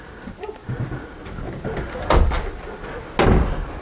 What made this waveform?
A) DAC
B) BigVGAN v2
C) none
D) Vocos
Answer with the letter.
C